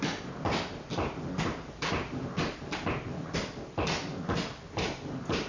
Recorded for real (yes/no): yes